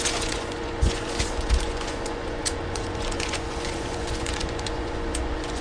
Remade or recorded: remade